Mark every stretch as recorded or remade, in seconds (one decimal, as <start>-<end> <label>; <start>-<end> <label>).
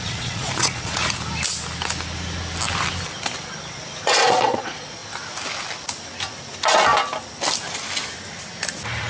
0.0-1.0 remade; 1.0-4.1 recorded; 4.1-5.0 remade; 5.0-9.1 recorded